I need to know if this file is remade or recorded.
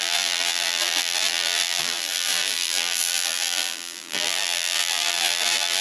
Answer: remade